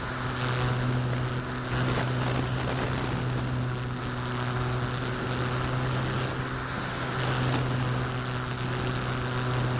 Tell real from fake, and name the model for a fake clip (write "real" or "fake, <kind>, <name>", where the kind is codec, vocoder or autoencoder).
real